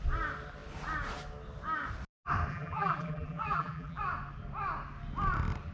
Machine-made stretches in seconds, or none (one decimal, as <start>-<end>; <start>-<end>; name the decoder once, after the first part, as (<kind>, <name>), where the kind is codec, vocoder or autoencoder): 2.5-4.0 (vocoder, BigVGAN v2)